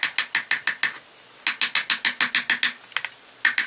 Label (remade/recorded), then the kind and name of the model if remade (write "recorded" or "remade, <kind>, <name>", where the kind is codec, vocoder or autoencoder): recorded